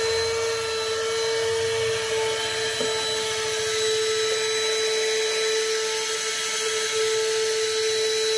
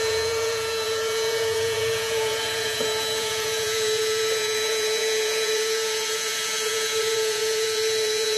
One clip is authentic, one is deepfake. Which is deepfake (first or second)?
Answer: second